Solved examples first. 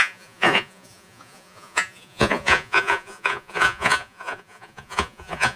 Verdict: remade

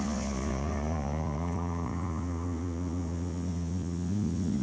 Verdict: remade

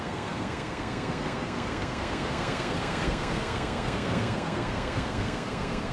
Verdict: remade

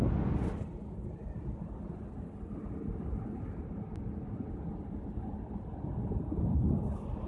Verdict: recorded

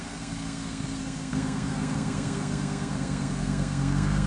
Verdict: remade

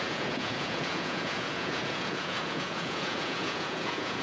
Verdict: remade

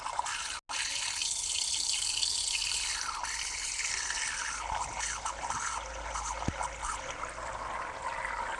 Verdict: recorded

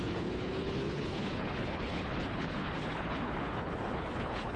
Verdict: remade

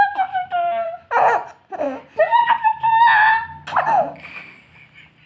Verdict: recorded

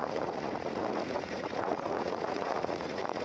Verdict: remade